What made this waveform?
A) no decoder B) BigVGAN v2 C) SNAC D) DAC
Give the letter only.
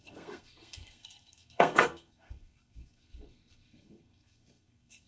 C